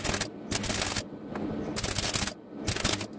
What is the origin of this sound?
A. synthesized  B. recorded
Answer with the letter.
B